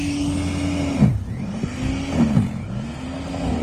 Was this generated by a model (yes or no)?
no